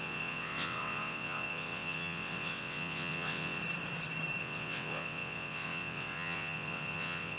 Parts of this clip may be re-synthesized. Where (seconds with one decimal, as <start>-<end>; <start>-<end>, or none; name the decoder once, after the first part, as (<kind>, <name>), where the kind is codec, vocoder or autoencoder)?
0.0-3.6 (vocoder, WaveNeXt); 4.4-7.4